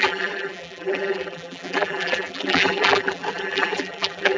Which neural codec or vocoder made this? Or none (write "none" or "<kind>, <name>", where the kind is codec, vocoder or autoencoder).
vocoder, BigVGAN v2